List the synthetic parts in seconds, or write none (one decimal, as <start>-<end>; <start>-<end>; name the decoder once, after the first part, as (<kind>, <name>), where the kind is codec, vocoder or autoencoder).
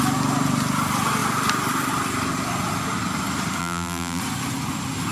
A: 3.6-4.2 (vocoder, BigVGAN v2)